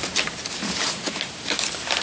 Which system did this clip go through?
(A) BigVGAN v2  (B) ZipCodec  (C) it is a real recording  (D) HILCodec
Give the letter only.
C